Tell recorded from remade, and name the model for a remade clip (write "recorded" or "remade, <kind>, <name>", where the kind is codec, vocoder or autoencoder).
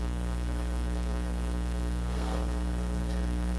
remade, codec, SNAC